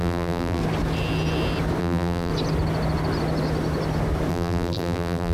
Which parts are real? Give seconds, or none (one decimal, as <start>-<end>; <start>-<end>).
0.6-1.8; 2.3-4.3